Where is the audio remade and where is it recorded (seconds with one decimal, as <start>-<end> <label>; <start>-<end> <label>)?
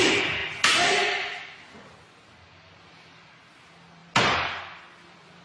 0.0-5.4 recorded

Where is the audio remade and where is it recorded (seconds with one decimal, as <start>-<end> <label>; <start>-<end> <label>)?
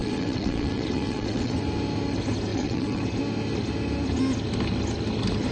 0.0-1.6 remade; 1.6-2.5 recorded; 2.5-3.0 remade; 3.0-5.5 recorded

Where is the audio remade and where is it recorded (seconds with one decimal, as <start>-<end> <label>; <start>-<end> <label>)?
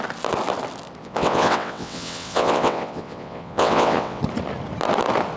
0.0-1.0 recorded; 1.0-4.2 remade; 4.2-5.4 recorded